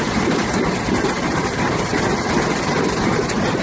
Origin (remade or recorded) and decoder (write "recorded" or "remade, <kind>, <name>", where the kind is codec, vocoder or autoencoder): recorded